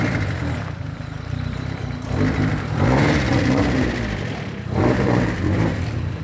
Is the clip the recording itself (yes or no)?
no